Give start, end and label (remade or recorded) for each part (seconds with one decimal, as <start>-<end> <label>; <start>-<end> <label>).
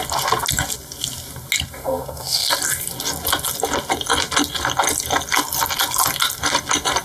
0.0-1.8 recorded; 1.8-2.5 remade; 2.5-7.0 recorded